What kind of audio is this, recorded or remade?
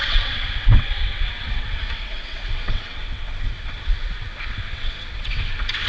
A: remade